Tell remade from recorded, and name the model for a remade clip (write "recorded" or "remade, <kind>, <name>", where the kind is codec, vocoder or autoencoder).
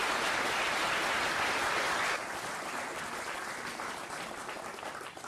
recorded